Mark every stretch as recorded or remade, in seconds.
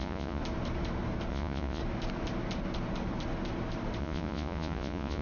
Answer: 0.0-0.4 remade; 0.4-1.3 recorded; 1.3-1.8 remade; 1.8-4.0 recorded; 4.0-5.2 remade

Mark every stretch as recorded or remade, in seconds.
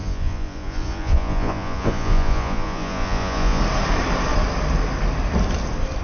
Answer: 0.0-3.6 remade; 3.6-6.0 recorded